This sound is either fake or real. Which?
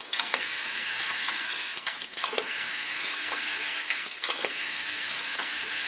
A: fake